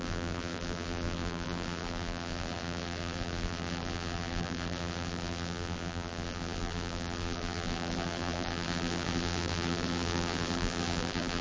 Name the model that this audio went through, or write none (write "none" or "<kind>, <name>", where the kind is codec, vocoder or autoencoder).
vocoder, BigVGAN v2